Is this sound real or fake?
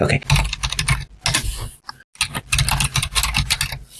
real